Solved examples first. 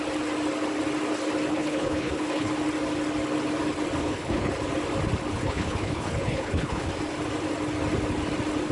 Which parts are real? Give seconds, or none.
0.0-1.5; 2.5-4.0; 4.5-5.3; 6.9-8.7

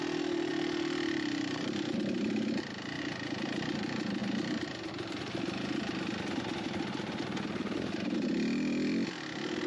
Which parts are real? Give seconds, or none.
0.0-9.7

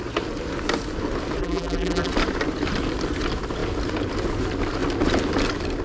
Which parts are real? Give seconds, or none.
0.0-1.4; 2.1-5.8

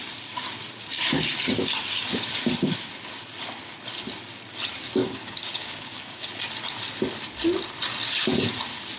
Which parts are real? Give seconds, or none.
0.0-5.0; 6.3-9.0

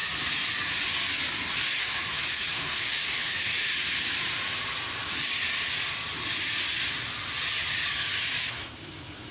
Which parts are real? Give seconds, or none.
0.0-1.8; 3.7-8.5

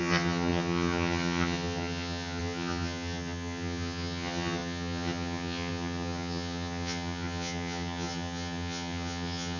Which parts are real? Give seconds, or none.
none

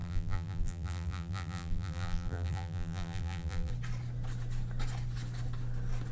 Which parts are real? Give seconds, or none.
3.7-6.1

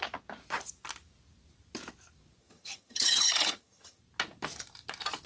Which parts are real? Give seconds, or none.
0.0-2.4; 4.0-5.3